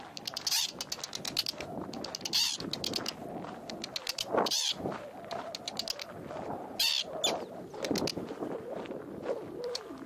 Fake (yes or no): no